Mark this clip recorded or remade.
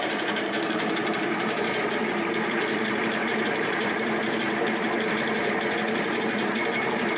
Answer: remade